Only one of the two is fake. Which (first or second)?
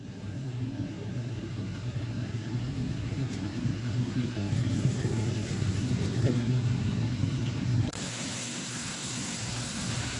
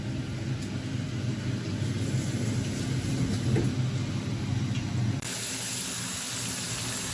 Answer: first